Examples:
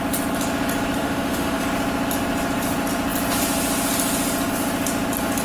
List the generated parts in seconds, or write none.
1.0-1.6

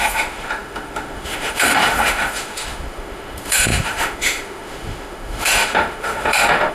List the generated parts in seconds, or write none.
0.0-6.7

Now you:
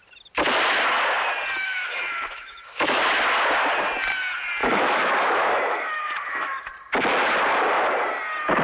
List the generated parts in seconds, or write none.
1.6-3.0; 4.6-6.7